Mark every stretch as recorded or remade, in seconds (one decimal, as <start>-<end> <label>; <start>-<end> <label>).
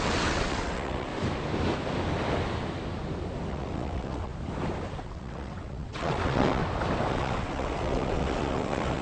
0.0-1.1 remade; 1.1-3.5 recorded; 3.5-4.3 remade; 4.3-5.0 recorded; 5.0-6.6 remade; 6.6-7.1 recorded; 7.1-9.0 remade